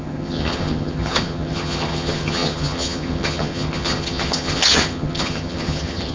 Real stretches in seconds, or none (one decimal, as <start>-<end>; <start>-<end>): none